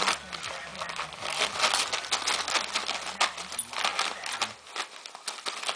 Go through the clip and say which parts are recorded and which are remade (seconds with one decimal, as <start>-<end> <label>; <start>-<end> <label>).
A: 0.0-5.8 recorded